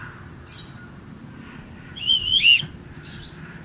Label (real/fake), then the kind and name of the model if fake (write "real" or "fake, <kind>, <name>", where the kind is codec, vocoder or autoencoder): real